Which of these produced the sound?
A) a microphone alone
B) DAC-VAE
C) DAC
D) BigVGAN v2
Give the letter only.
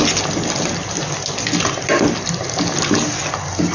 A